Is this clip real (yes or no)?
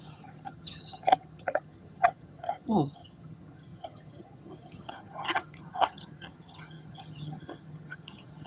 no